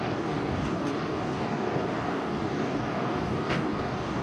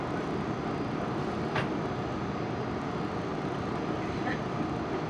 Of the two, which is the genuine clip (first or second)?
second